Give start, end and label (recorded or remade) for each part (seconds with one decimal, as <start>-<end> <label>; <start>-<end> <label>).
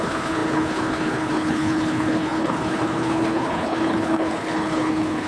0.0-5.3 remade